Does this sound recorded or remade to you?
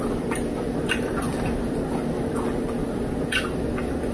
recorded